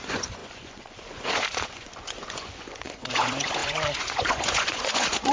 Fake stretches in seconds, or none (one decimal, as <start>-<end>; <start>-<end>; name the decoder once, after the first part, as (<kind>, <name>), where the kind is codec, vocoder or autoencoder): 0.0-5.3 (vocoder, Vocos)